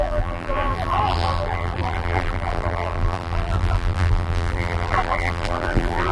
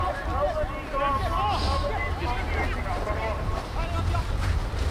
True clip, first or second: second